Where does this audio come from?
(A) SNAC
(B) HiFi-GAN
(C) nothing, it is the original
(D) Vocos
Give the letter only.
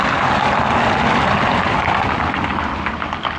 C